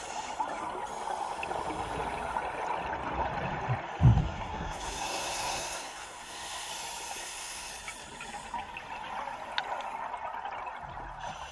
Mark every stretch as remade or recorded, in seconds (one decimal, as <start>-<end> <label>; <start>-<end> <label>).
0.0-4.2 recorded; 4.2-6.7 remade; 6.7-7.2 recorded; 7.2-7.7 remade; 7.7-11.5 recorded